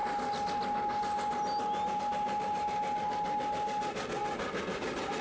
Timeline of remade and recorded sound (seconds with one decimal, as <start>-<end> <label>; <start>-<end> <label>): 0.0-5.2 recorded